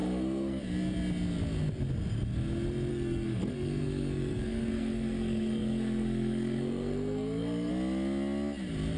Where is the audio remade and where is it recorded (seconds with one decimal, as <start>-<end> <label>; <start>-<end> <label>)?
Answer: 0.0-0.6 remade; 0.6-2.9 recorded; 2.9-7.7 remade; 7.7-9.0 recorded